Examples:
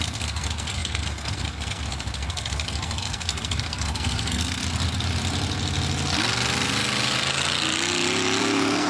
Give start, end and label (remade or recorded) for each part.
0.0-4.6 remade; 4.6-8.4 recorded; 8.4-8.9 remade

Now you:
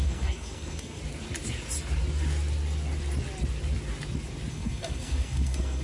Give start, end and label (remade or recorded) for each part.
0.0-1.0 remade; 1.0-4.5 recorded; 4.5-5.8 remade

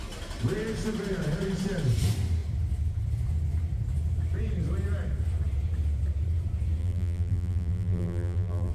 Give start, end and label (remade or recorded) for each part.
0.0-6.8 recorded; 6.8-8.7 remade

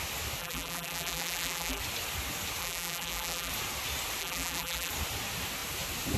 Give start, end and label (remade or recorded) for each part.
0.0-0.4 recorded; 0.4-1.8 remade; 1.8-2.6 recorded; 2.6-3.5 remade; 3.5-4.2 recorded; 4.2-4.9 remade; 4.9-6.2 recorded